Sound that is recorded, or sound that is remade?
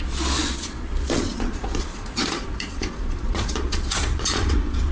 remade